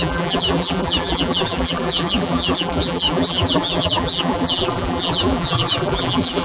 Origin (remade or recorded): remade